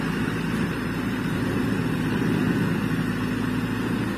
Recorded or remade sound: recorded